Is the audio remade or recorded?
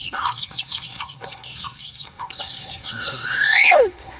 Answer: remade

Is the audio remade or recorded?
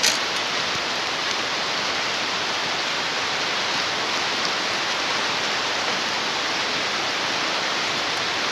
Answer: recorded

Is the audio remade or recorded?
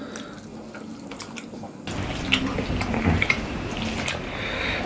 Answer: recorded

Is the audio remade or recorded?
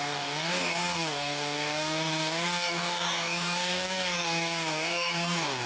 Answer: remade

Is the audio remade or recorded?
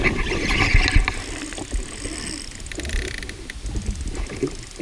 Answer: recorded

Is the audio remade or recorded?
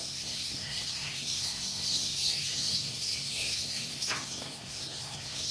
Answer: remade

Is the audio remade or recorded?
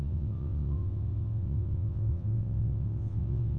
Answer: remade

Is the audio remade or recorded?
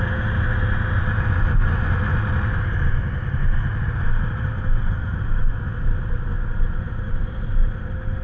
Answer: recorded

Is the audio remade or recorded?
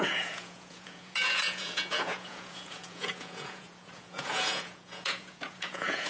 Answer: remade